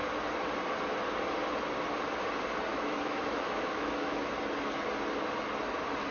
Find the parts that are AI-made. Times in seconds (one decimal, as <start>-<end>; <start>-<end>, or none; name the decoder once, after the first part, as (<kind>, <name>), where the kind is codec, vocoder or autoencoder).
2.7-4.3 (autoencoder, DAC-VAE)